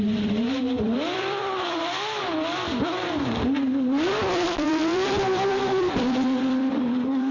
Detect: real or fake fake